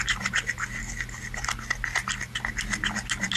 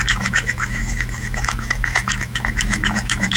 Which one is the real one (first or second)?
first